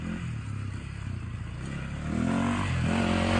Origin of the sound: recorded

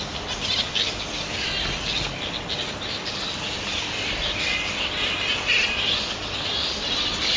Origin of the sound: recorded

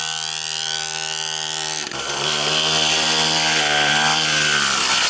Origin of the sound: recorded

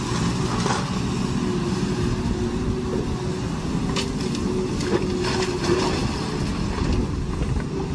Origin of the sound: recorded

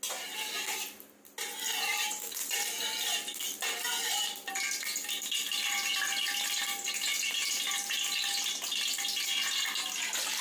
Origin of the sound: recorded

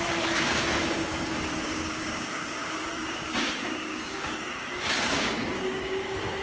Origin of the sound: remade